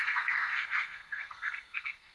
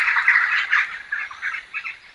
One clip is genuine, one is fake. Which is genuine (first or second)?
second